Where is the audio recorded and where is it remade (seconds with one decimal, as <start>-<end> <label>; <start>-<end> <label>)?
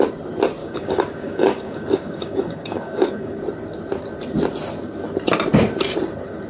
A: 0.0-0.6 recorded; 0.6-3.4 remade; 3.4-6.5 recorded